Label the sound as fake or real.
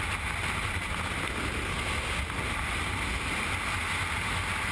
real